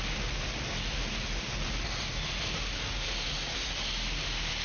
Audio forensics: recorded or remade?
recorded